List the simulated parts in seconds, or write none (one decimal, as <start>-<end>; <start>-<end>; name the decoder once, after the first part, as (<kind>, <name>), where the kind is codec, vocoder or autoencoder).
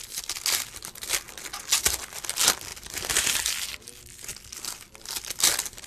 none